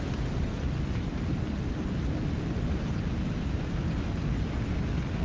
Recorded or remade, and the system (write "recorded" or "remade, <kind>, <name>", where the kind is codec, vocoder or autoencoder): recorded